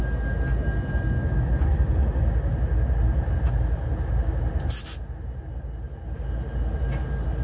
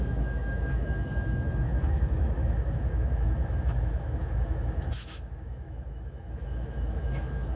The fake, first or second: second